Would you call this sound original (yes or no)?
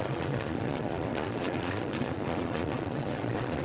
no